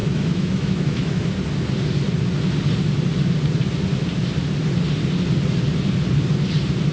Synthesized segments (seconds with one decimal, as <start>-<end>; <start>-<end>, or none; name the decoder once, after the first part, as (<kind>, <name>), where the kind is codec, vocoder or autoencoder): 0.0-1.3 (autoencoder, DAC-VAE)